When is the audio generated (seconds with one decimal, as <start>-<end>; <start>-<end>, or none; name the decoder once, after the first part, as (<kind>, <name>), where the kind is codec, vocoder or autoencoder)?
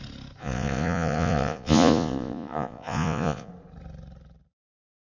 0.4-3.5 (vocoder, Vocos)